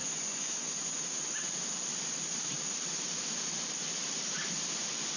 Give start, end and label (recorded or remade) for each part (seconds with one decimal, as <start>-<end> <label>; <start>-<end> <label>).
0.0-1.0 remade; 1.0-5.2 recorded